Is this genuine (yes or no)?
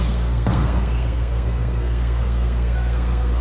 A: no